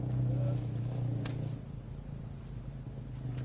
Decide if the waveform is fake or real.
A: real